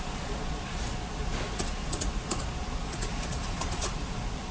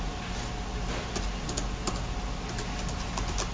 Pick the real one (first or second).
second